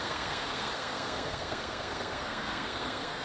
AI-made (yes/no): yes